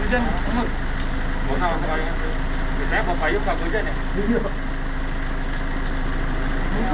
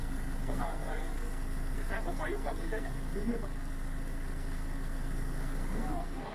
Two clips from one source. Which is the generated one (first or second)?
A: second